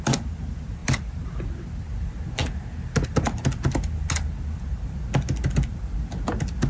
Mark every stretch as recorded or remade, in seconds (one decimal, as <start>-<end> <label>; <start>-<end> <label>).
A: 0.0-6.7 recorded